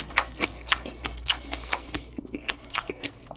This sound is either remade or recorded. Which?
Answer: remade